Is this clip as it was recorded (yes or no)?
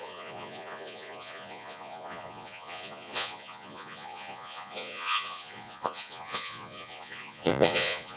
no